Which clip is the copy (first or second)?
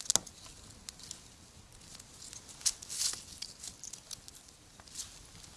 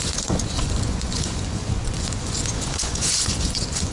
second